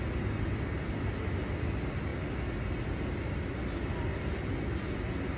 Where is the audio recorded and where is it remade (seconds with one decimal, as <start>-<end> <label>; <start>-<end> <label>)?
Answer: 0.0-5.4 recorded